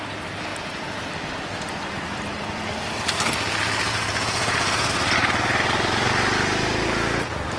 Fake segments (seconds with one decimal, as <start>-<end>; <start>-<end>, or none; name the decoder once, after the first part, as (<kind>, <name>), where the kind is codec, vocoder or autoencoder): 0.5-1.1 (vocoder, Vocos); 3.9-4.9